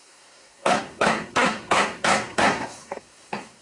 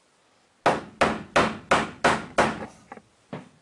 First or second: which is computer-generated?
first